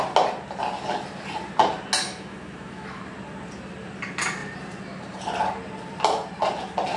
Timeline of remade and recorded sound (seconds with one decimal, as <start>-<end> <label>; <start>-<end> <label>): 0.0-2.0 recorded; 2.0-3.0 remade; 3.0-7.0 recorded